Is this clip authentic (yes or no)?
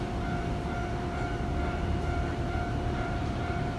no